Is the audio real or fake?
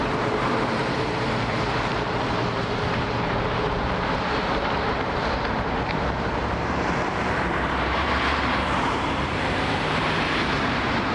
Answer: fake